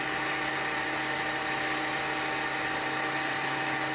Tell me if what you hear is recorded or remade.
recorded